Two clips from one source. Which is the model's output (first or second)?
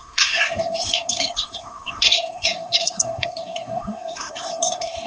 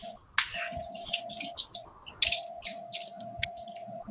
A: first